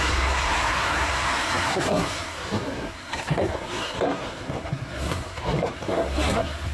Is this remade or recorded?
remade